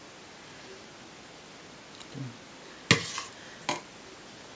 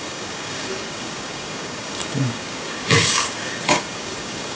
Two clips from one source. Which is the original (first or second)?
first